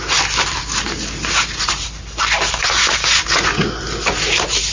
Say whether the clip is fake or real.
real